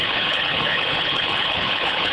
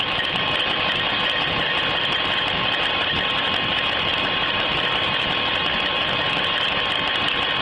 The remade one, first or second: first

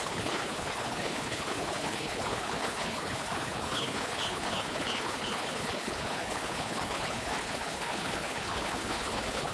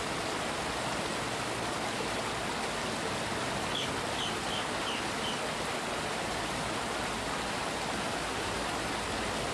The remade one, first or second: first